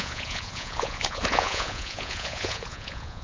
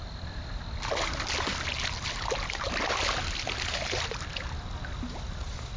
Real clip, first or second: second